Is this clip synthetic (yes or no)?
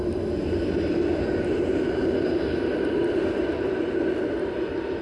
no